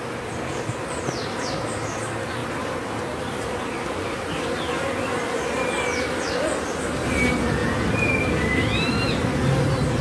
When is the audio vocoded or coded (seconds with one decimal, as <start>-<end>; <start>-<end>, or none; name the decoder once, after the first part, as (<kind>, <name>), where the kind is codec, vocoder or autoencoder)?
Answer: none